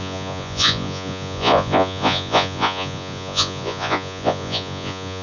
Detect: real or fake fake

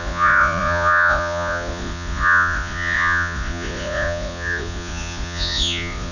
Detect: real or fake fake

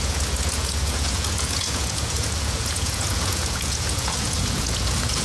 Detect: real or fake fake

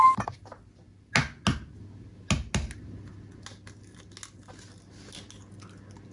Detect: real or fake real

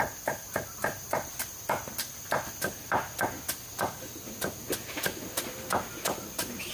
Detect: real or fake real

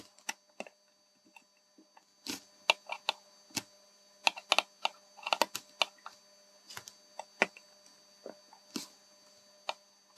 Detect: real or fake real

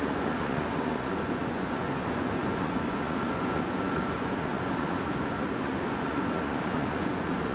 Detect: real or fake fake